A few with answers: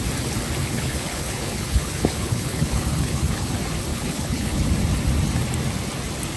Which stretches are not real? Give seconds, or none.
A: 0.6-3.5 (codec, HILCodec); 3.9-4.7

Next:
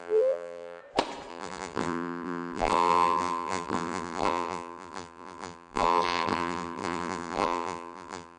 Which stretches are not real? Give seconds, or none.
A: 0.0-0.8 (vocoder, BigVGAN v2); 1.3-8.4

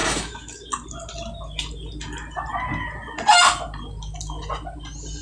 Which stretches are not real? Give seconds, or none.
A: 0.0-0.7 (autoencoder, DAC-VAE)